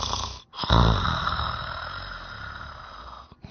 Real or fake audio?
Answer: real